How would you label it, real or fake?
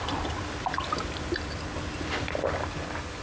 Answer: real